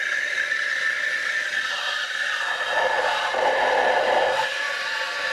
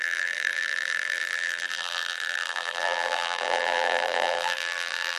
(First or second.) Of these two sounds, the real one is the first